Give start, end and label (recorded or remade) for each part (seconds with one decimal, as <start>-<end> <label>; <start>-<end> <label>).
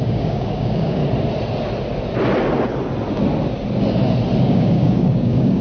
0.0-1.0 remade; 1.0-4.4 recorded; 4.4-5.6 remade